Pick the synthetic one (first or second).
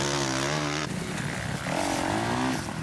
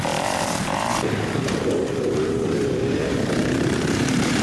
second